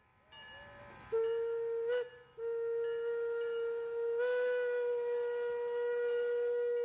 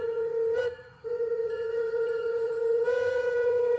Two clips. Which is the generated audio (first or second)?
second